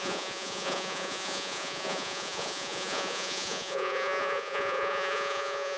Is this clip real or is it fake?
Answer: fake